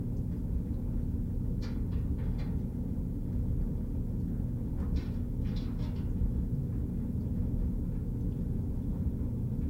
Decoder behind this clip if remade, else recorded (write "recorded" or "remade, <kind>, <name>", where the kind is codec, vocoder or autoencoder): recorded